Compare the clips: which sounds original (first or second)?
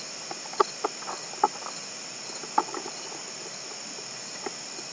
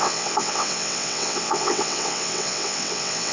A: first